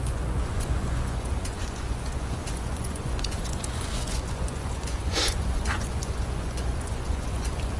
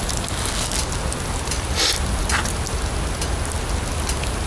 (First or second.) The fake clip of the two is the first